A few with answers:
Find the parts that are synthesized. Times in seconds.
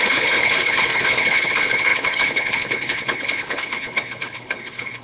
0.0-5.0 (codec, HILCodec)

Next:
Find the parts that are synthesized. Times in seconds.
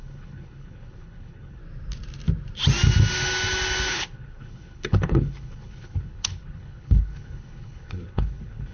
0.0-1.6 (codec, HILCodec); 3.9-8.7